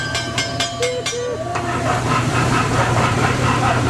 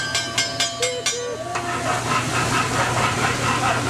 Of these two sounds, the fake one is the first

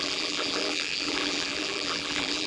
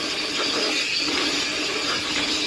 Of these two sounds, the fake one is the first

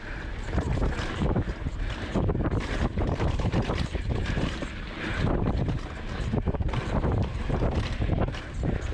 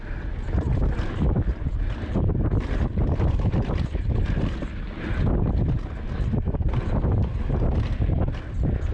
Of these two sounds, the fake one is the first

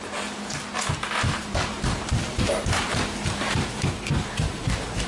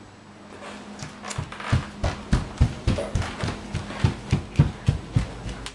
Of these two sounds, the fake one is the first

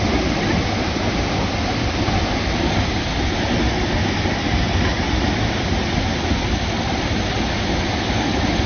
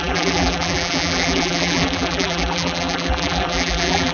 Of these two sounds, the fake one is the second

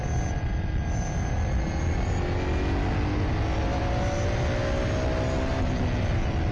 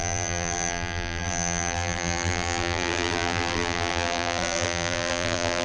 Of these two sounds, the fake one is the second